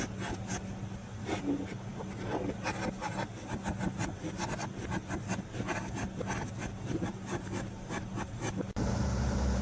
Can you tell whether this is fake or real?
real